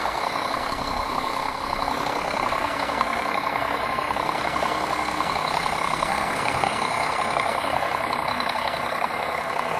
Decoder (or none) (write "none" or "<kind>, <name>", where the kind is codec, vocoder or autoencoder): codec, SNAC